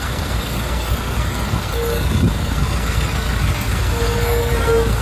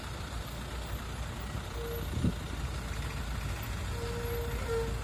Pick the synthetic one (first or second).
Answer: first